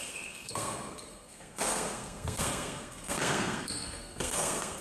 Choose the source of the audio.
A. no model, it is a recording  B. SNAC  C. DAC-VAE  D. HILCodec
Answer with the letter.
B